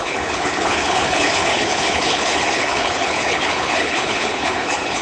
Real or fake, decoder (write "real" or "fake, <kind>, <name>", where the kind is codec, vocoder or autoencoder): fake, codec, HILCodec